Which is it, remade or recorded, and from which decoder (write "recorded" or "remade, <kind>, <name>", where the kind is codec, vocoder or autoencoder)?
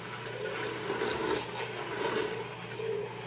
recorded